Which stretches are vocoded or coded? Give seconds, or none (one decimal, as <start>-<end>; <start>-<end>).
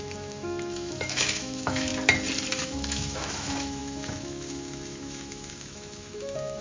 0.0-1.9; 2.6-6.6